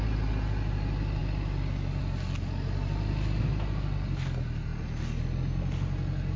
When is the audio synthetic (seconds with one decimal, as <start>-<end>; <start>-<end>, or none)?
none